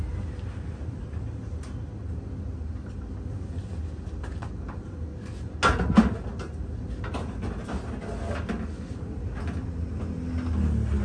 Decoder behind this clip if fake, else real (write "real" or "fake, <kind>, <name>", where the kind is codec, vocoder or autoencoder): real